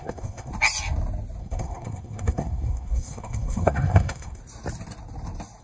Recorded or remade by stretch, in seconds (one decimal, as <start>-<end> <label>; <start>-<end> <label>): 0.0-0.5 remade; 0.5-1.4 recorded; 1.4-4.4 remade; 4.4-5.6 recorded

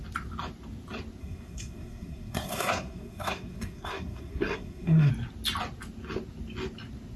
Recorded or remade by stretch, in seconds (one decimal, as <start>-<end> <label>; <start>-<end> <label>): 0.0-1.2 recorded; 1.2-5.1 remade; 5.1-7.2 recorded

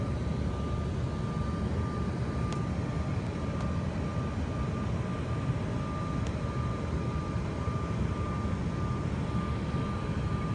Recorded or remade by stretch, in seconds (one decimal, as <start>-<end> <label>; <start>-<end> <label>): 0.0-10.5 recorded

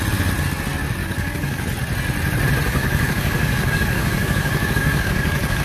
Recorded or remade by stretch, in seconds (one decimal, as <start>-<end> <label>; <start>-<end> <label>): 0.0-1.0 recorded; 1.0-1.6 remade; 1.6-2.8 recorded; 2.8-5.6 remade

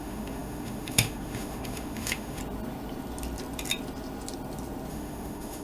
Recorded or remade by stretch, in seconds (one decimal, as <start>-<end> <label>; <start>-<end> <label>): 0.0-2.4 remade; 2.4-4.9 recorded; 4.9-5.6 remade

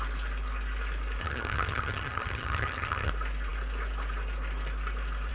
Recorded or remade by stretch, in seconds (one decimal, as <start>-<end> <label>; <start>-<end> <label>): 0.0-1.2 recorded; 1.2-3.1 remade; 3.1-5.3 recorded